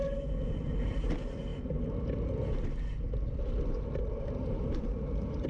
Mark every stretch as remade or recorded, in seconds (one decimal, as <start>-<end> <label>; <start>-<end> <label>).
0.0-5.5 recorded